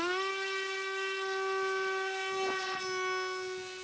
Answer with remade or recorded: recorded